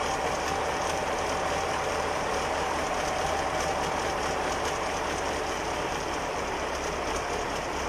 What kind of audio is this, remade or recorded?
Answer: remade